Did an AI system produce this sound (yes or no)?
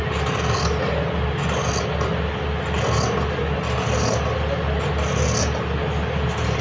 no